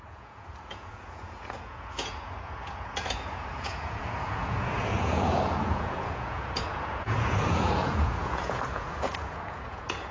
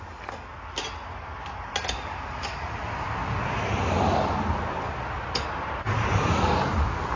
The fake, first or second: first